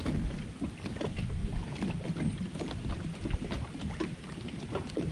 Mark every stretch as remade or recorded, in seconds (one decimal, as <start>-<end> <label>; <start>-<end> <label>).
0.0-5.1 recorded